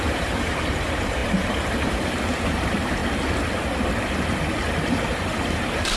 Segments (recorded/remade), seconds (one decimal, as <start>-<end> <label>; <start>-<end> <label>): 0.0-3.0 remade; 3.0-4.8 recorded; 4.8-6.0 remade